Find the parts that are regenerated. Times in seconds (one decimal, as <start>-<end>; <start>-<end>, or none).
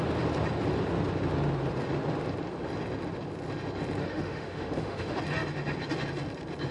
4.0-5.2